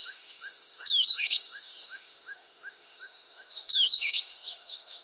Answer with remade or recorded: remade